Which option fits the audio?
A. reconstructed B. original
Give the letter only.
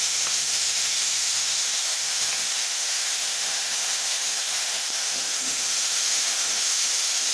A